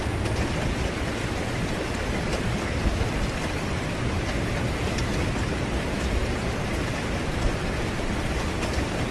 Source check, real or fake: real